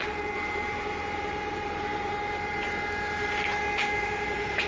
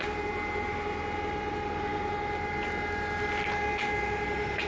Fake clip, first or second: first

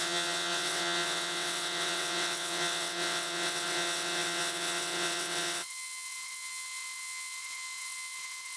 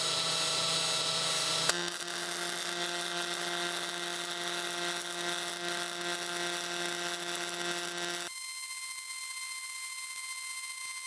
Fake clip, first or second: first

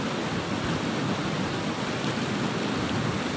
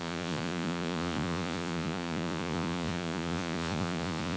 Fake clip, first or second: second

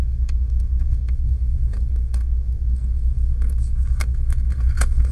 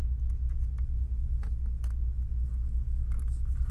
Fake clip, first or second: first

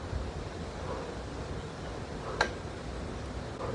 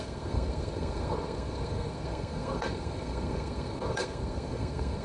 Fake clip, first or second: second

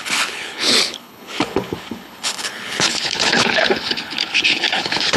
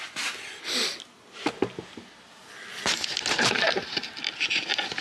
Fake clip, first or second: first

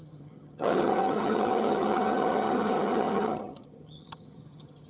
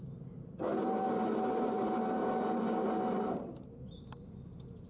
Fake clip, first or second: first